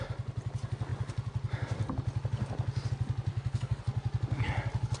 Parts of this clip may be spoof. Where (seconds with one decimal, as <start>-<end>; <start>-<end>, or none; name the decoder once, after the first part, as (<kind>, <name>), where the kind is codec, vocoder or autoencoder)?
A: 3.3-3.8 (codec, SNAC)